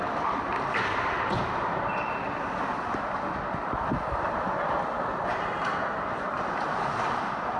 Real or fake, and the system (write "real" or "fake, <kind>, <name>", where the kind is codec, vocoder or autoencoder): real